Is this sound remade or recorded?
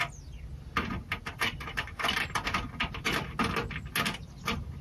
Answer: recorded